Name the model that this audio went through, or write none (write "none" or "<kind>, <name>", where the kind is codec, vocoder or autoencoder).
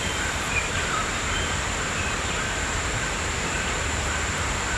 vocoder, BigVGAN v2